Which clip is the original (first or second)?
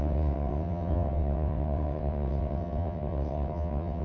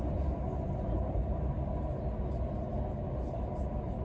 second